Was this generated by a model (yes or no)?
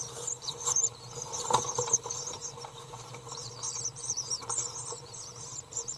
yes